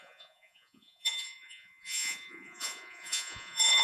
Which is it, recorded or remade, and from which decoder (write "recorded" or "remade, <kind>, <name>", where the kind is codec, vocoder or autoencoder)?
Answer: remade, vocoder, Vocos